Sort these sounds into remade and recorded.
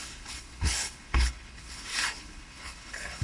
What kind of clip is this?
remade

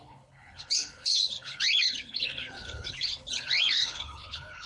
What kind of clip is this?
remade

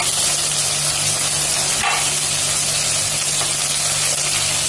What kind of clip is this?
recorded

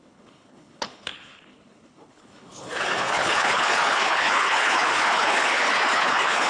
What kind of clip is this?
remade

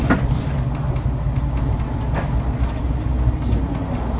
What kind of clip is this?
recorded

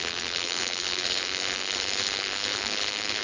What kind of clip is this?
remade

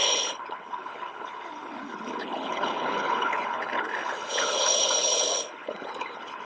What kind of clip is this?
remade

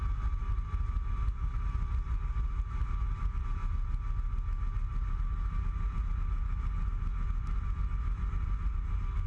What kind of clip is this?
recorded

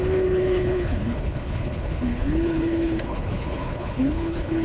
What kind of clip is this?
remade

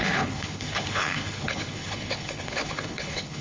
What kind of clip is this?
remade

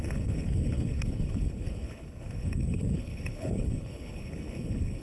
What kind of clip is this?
remade